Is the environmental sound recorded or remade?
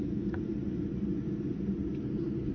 recorded